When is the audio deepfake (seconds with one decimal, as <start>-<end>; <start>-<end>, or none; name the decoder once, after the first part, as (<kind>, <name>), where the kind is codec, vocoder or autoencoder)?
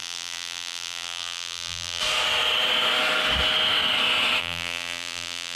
0.0-2.0 (vocoder, BigVGAN v2); 4.4-5.6